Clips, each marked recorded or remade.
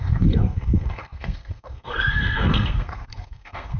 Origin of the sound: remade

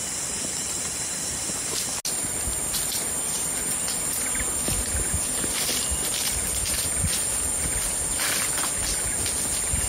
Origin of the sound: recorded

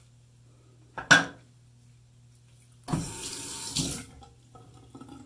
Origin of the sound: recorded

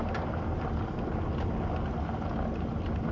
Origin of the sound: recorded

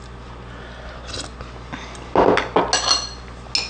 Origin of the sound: recorded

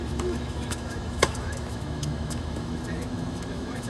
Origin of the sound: remade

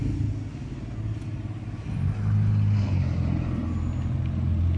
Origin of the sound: recorded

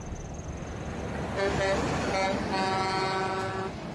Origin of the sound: recorded